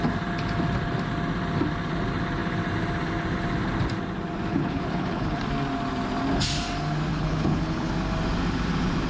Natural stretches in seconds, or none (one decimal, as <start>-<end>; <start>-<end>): 0.0-4.5; 5.4-7.1; 7.9-9.1